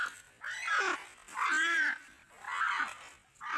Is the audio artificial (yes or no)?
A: no